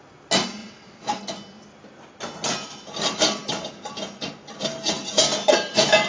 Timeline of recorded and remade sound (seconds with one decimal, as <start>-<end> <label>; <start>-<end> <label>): 0.0-0.6 recorded; 0.6-1.2 remade; 1.2-6.1 recorded